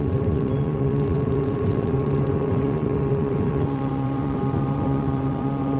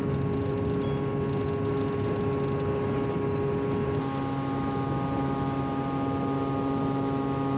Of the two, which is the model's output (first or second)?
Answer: first